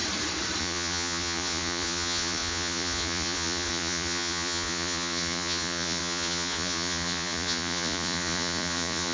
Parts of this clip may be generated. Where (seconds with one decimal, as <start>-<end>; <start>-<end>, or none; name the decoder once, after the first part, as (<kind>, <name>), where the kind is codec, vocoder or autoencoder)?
0.6-9.1 (vocoder, Vocos)